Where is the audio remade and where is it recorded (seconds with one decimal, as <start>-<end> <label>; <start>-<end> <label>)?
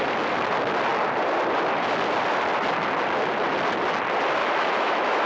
0.0-4.4 recorded; 4.4-5.3 remade